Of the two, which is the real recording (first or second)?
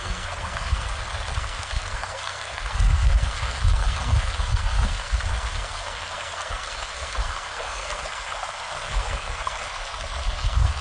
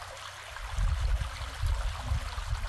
second